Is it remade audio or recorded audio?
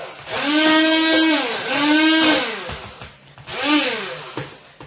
recorded